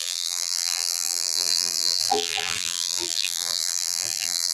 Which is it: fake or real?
fake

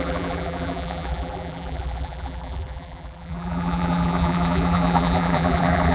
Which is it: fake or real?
fake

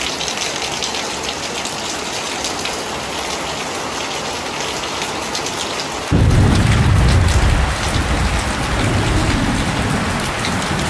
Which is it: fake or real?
real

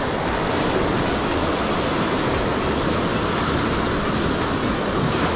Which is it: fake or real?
real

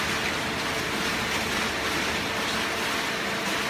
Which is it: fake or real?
real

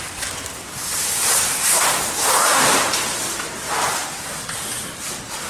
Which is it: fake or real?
fake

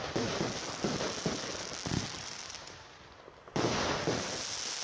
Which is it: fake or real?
real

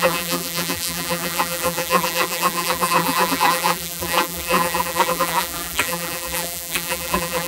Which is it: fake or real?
fake